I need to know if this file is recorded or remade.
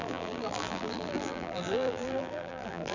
remade